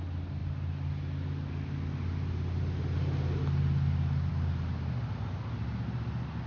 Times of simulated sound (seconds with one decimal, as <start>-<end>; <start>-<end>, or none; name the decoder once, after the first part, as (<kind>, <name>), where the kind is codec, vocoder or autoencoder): none